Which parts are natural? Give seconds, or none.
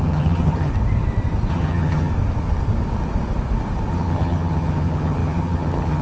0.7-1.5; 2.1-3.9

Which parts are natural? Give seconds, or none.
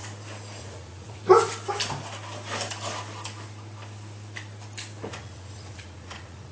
0.0-0.6; 1.2-5.1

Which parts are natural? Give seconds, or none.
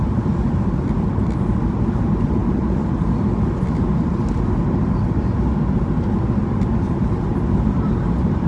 0.0-7.3; 7.9-8.5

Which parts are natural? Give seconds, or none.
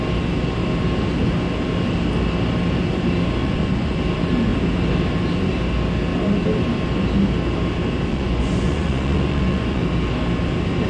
0.0-3.4; 4.0-8.1; 9.8-10.9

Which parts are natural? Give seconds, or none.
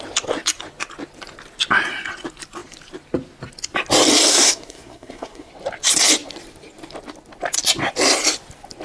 0.0-4.3; 5.5-8.8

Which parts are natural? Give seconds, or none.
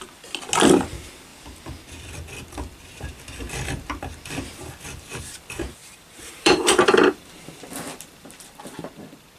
0.0-5.8; 7.6-9.4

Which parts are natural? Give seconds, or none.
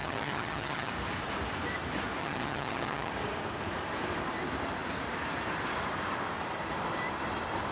0.9-2.2; 3.1-7.7